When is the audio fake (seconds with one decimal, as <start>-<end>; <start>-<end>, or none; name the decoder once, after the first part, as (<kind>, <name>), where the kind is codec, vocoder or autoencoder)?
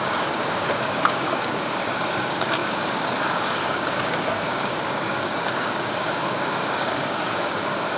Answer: 0.0-8.0 (codec, DAC)